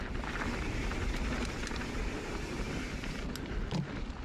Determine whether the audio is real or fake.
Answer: real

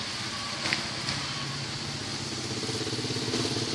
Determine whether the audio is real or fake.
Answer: real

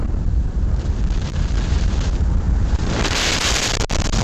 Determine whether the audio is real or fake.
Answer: fake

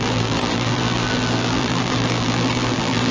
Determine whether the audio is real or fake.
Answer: fake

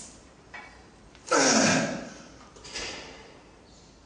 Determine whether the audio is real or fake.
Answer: fake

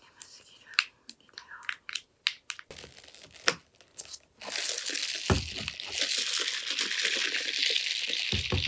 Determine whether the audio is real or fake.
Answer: real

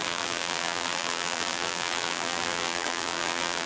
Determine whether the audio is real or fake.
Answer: fake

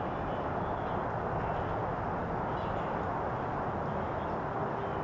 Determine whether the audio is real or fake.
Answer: real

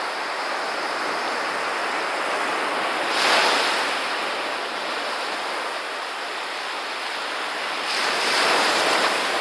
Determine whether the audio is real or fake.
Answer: real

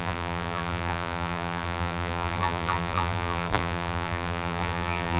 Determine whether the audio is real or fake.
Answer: fake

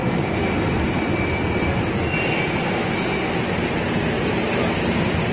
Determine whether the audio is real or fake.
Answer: fake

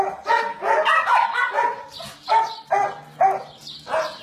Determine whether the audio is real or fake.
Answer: real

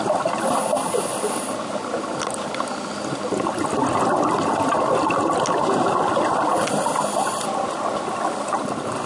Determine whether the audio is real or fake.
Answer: real